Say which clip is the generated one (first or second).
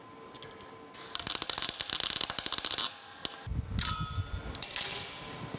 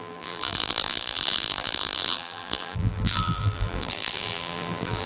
second